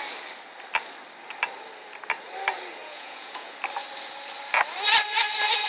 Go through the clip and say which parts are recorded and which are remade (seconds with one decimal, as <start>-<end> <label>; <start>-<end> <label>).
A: 0.0-2.8 recorded; 2.8-3.5 remade; 3.5-5.7 recorded